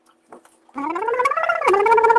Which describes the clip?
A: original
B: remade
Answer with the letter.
A